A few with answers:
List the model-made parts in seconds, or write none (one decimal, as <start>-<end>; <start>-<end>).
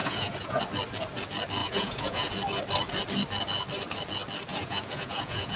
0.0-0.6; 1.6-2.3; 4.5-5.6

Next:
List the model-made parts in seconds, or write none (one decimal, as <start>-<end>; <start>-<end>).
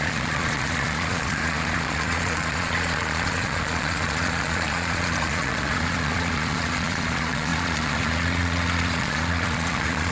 0.0-10.1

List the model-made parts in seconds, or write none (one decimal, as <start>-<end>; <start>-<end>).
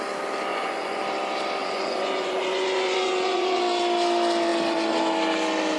0.5-1.0; 1.6-3.6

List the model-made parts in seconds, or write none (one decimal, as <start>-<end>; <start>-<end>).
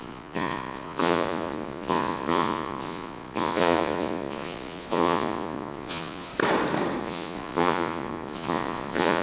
0.0-6.3; 7.0-9.2